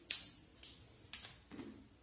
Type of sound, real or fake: real